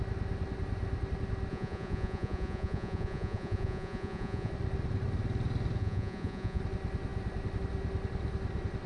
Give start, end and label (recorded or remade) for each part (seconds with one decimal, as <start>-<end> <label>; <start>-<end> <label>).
0.0-1.5 recorded; 1.5-4.5 remade; 4.5-5.8 recorded; 5.8-6.6 remade; 6.6-8.9 recorded